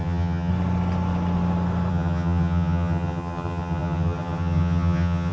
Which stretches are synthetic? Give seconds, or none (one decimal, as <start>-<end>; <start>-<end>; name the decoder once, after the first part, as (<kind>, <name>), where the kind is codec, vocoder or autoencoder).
0.0-0.5 (vocoder, HiFi-GAN); 1.9-5.3